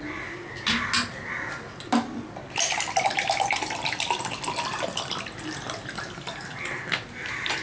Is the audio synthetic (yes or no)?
no